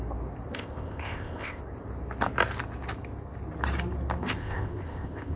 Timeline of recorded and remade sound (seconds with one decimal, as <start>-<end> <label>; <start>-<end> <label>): 0.0-0.5 recorded; 0.5-1.6 remade; 1.6-4.2 recorded; 4.2-5.4 remade